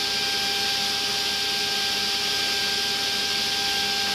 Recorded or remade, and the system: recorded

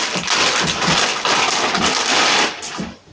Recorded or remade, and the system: recorded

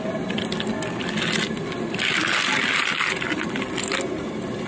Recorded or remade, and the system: recorded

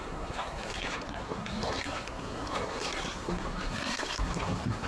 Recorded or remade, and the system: remade, codec, SNAC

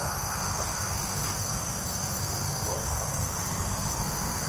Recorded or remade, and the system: remade, codec, SNAC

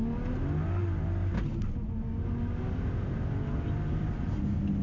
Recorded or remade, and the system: recorded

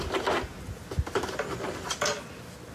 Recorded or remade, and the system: recorded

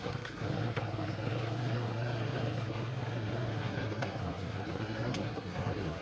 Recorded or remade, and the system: remade, codec, SNAC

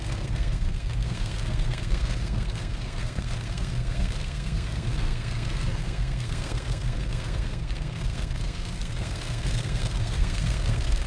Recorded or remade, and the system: remade, codec, SNAC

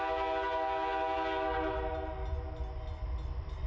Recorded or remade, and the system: recorded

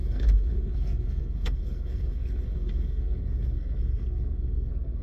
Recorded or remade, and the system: remade, codec, SNAC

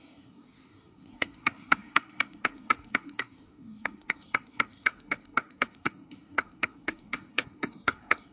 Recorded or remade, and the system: remade, codec, SNAC